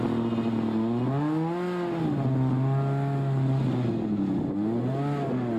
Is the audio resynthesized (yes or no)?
no